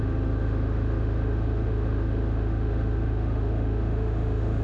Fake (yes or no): yes